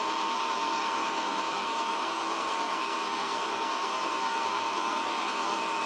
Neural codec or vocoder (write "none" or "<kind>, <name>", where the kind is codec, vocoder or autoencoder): codec, SNAC